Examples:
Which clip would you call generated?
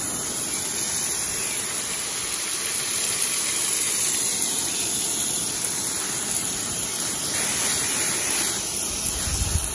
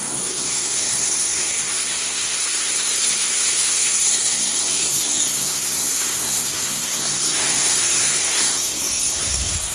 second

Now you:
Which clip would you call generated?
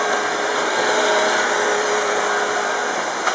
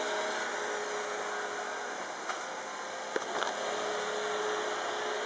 first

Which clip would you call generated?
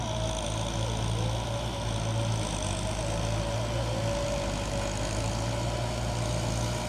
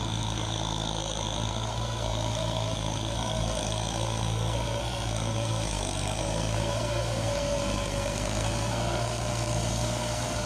second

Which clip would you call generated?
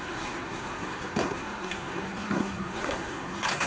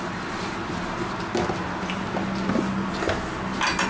first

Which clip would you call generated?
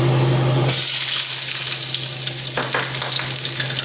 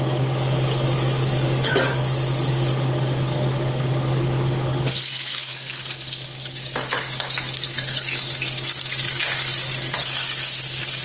second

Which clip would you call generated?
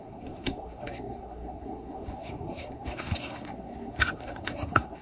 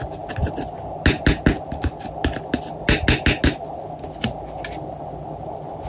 first